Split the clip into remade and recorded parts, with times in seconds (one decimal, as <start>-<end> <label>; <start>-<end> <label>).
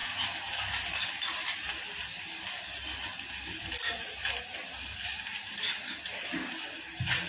0.0-7.3 recorded